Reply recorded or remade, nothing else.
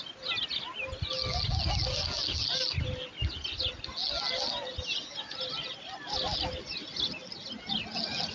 recorded